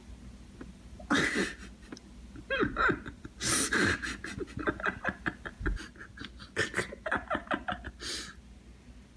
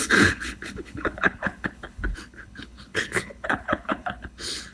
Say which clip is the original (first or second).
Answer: first